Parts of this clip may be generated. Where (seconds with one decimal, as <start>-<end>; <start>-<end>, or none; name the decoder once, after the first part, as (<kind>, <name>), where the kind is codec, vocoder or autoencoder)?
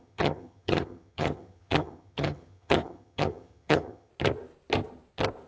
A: 0.0-4.1 (vocoder, HiFi-GAN)